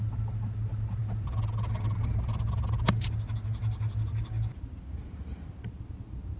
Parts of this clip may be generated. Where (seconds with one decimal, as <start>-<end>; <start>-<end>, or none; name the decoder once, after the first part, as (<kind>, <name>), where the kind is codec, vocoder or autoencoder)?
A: none